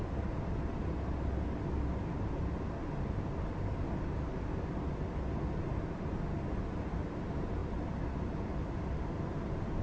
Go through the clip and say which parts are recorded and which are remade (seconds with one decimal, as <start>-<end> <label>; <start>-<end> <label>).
0.0-9.8 recorded